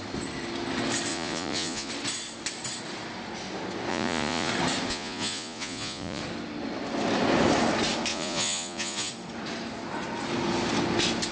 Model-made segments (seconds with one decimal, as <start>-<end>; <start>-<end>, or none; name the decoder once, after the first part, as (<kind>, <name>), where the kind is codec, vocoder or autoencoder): 1.1-1.9 (vocoder, Vocos); 3.9-4.5; 4.9-6.2; 8.1-9.1